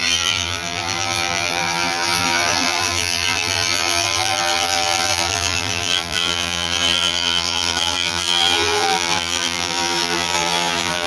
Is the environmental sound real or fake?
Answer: fake